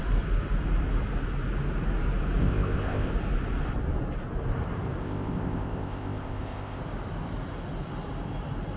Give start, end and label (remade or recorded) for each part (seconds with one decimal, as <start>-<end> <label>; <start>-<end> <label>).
0.0-2.4 recorded; 2.4-3.1 remade; 3.1-5.0 recorded; 5.0-6.8 remade; 6.8-8.8 recorded